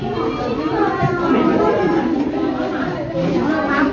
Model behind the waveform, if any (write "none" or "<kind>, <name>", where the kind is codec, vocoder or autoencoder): none